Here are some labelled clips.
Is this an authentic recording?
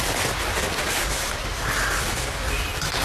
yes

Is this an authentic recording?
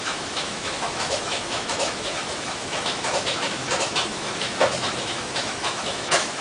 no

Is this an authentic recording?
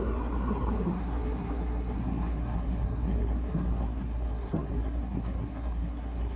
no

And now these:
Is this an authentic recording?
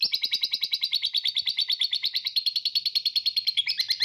yes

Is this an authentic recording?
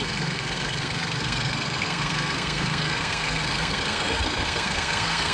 no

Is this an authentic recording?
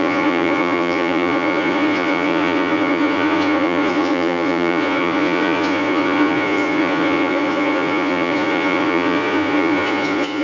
no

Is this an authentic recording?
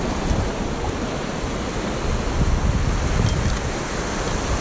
yes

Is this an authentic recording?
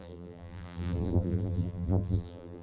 no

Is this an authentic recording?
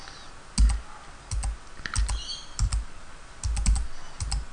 yes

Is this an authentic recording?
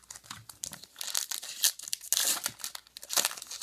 yes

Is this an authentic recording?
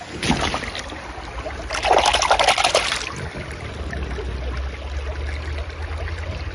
yes